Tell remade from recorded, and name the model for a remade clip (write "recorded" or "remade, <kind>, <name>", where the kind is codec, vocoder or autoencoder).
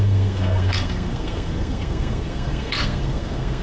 remade, codec, SNAC